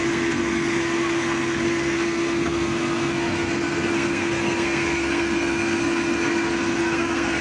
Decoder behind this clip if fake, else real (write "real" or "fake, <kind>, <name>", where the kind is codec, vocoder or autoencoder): fake, codec, SNAC